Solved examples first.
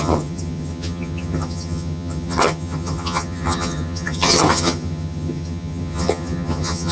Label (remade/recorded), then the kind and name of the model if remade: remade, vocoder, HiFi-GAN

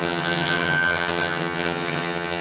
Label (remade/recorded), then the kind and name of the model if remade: remade, vocoder, HiFi-GAN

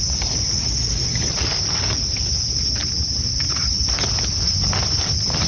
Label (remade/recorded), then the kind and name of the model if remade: recorded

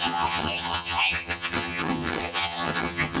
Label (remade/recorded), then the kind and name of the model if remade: remade, vocoder, HiFi-GAN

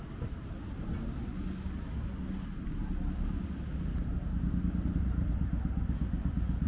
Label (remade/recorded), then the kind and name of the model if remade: recorded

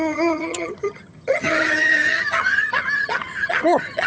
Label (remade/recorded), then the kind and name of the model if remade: remade, vocoder, HiFi-GAN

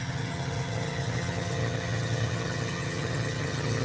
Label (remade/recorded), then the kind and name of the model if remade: remade, vocoder, HiFi-GAN